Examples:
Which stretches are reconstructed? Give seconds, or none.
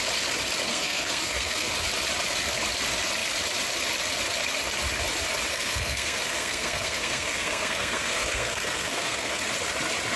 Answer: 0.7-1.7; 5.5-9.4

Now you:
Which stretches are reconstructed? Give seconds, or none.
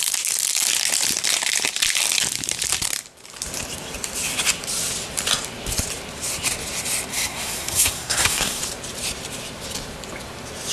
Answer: 7.1-8.6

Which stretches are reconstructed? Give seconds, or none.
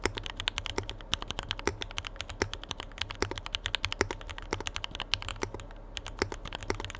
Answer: none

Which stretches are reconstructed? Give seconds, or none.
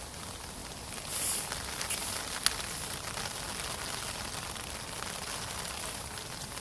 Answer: none